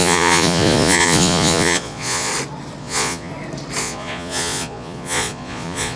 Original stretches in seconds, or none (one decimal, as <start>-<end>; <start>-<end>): 2.3-2.8; 3.3-3.8